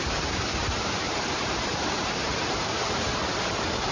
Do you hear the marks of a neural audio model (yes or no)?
yes